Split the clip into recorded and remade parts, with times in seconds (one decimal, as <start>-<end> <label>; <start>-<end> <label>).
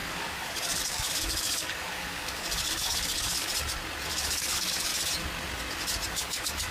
0.0-3.5 remade; 3.5-4.1 recorded; 4.1-4.9 remade; 4.9-6.1 recorded; 6.1-6.7 remade